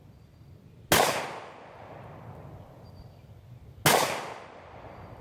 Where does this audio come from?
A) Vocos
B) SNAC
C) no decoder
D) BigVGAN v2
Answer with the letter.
C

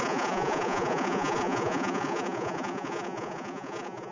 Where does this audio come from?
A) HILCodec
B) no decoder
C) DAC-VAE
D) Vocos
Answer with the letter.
D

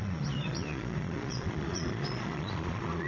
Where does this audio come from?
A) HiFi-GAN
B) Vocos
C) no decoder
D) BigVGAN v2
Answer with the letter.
B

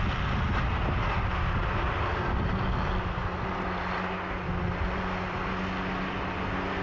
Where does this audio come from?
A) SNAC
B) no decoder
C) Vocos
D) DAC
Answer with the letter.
B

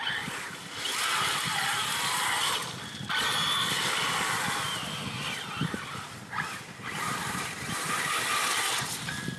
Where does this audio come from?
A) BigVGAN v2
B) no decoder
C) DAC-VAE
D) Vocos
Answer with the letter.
B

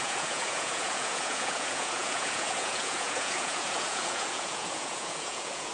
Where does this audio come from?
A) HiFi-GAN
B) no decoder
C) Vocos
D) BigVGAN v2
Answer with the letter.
C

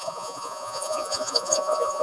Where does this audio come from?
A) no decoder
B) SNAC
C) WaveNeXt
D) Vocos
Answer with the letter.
D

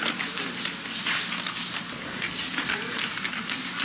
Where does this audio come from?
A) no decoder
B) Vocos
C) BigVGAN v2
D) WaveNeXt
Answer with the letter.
A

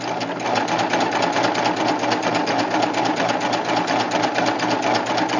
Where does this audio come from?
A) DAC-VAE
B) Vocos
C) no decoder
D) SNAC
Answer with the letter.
C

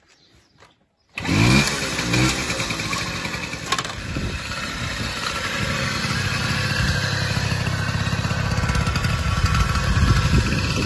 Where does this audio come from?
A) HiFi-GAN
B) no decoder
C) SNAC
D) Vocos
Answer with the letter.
B